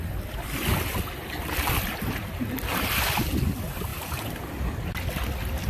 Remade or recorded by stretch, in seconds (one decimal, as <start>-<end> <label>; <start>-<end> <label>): 0.0-5.7 recorded